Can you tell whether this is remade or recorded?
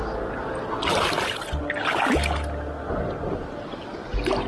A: recorded